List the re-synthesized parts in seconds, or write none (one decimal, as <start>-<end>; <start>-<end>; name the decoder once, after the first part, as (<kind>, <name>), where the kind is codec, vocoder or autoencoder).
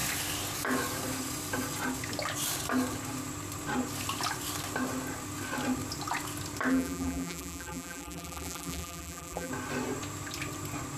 6.7-9.5 (vocoder, BigVGAN v2)